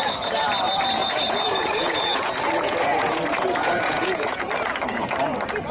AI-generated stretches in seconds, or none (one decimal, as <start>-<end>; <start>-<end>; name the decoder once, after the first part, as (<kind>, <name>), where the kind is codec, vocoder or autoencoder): 1.0-4.4 (vocoder, Vocos)